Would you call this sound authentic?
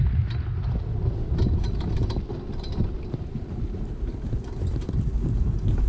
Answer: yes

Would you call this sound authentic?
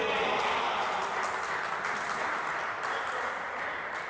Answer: yes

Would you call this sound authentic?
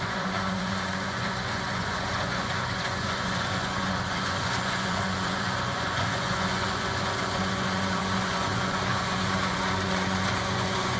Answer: no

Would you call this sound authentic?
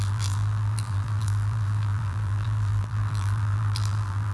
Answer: no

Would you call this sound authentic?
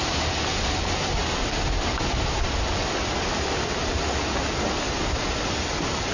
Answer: yes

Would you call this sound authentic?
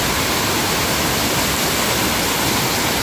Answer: yes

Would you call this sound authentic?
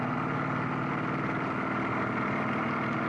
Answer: yes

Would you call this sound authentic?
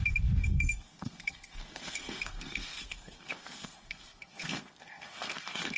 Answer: no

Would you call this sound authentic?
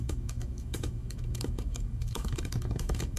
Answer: no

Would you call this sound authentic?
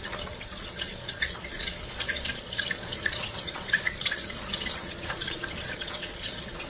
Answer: no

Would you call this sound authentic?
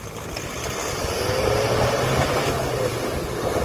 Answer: yes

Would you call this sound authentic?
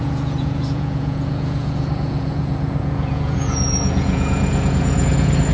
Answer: no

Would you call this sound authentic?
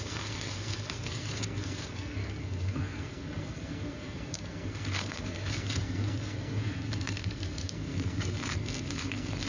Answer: no